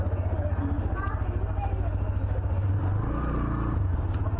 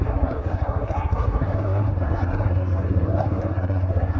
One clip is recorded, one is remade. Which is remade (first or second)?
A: second